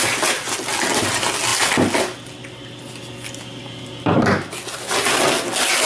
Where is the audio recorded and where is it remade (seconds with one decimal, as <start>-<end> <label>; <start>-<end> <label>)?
0.0-5.9 recorded